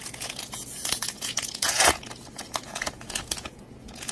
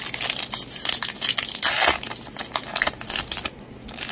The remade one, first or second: first